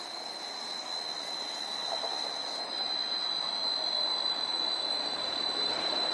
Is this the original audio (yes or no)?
yes